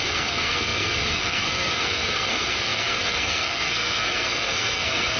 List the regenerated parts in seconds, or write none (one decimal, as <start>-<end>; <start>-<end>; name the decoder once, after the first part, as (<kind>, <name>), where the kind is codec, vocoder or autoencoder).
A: 0.0-5.2 (codec, SNAC)